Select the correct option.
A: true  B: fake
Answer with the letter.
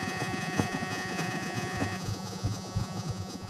B